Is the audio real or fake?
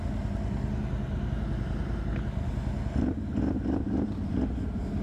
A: real